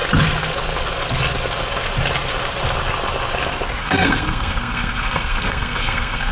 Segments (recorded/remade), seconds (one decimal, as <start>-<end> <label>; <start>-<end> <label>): 0.0-3.8 recorded; 3.8-6.3 remade